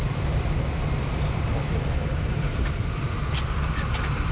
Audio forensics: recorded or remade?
remade